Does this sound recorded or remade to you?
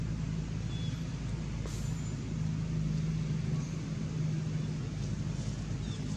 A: recorded